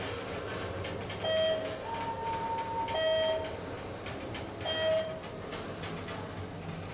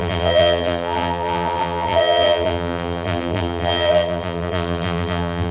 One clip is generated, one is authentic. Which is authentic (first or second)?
first